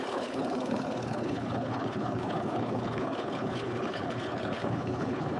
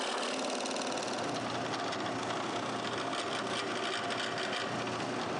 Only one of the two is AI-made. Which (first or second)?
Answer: first